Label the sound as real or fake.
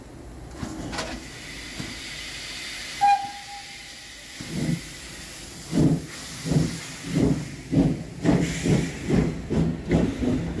real